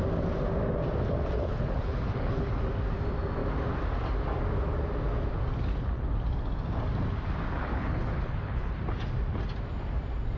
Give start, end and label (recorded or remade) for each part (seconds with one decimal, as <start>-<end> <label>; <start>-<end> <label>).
0.0-1.4 recorded; 1.4-2.5 remade; 2.5-5.7 recorded; 5.7-6.2 remade; 6.2-7.6 recorded; 7.6-8.8 remade; 8.8-10.4 recorded